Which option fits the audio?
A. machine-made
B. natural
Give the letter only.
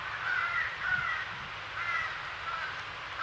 B